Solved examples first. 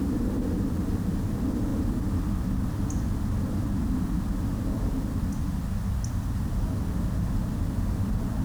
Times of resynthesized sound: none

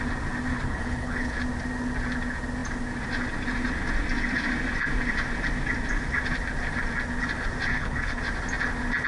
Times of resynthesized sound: 0.5-1.4 (codec, HILCodec); 7.7-8.2

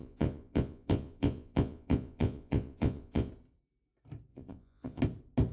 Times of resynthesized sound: 0.0-3.3 (vocoder, Vocos); 4.3-5.0

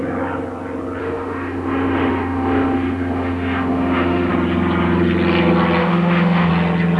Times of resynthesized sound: 1.0-4.3 (autoencoder, DAC-VAE); 5.8-6.5

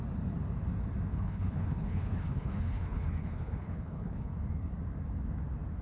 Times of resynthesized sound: 1.1-4.3 (codec, HILCodec)

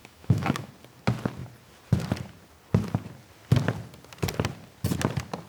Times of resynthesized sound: 0.0-0.7 (autoencoder, DAC-VAE)

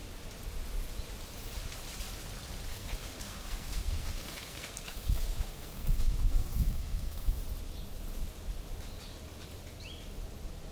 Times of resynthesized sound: 2.7-7.4 (codec, SNAC)